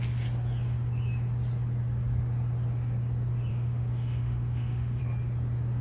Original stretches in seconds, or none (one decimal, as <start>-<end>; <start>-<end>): 0.0-3.5; 5.0-5.8